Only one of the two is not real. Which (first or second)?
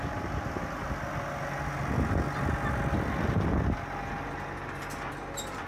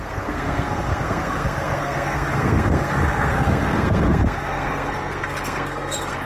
second